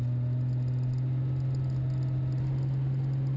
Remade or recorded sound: recorded